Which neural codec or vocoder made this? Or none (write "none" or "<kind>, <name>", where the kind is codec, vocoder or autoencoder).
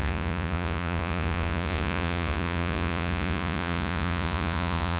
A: vocoder, Vocos